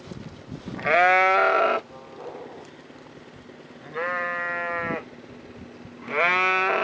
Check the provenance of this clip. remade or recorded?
recorded